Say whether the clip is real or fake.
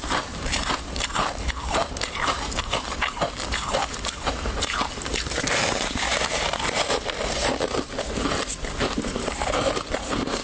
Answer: fake